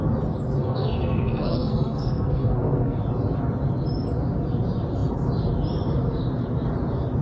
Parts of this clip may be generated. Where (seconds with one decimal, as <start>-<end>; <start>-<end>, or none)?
0.6-3.0